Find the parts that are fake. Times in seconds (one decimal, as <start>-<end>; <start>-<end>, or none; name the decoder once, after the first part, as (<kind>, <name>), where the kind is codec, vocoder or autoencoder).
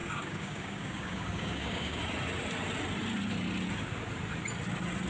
0.0-2.0 (codec, DAC)